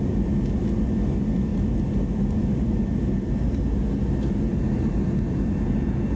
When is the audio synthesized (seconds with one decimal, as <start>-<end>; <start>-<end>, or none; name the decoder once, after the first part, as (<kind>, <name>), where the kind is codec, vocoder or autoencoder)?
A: none